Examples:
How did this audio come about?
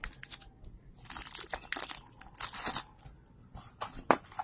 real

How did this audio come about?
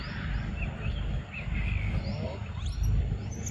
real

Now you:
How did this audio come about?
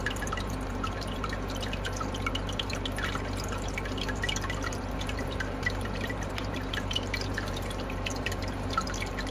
fake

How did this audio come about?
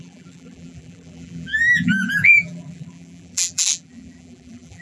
fake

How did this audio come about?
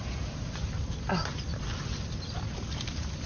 fake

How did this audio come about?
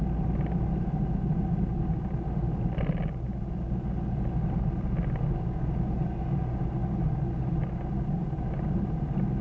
real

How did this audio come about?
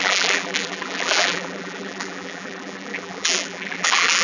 fake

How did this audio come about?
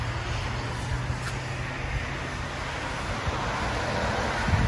real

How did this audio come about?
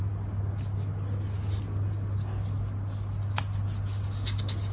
real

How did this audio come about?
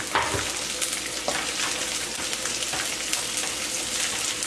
real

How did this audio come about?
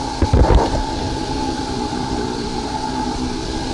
fake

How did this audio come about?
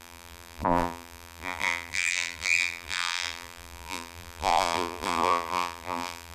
fake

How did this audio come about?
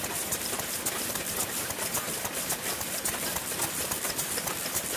fake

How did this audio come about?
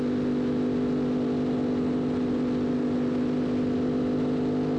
real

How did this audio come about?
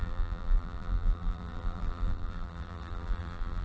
fake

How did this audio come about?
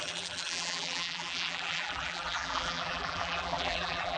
fake